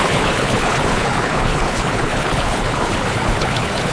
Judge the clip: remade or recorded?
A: remade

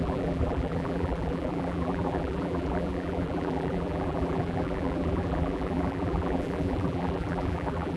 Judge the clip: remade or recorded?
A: remade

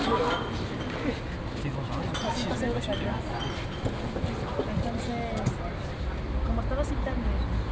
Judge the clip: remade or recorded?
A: recorded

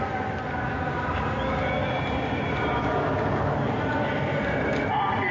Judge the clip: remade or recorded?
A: recorded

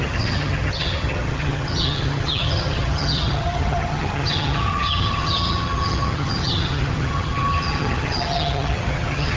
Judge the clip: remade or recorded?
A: remade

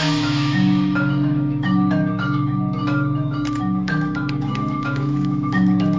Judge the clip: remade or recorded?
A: remade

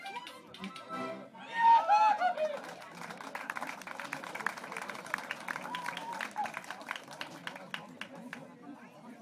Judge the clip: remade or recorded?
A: recorded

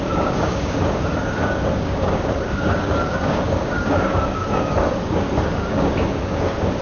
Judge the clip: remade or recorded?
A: remade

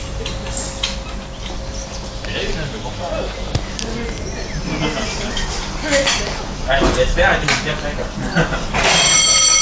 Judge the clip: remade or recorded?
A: recorded